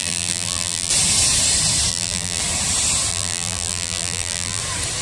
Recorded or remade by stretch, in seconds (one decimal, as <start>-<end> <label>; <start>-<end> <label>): 0.0-0.9 remade; 0.9-1.9 recorded; 1.9-2.4 remade; 2.4-3.1 recorded; 3.1-4.6 remade; 4.6-5.0 recorded